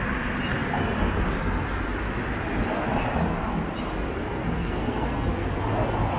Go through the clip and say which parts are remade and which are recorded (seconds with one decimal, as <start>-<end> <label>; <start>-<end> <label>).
0.0-4.3 recorded; 4.3-5.5 remade; 5.5-6.2 recorded